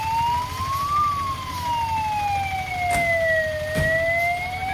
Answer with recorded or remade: recorded